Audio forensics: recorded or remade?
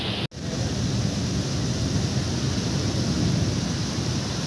recorded